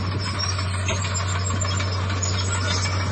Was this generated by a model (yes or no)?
no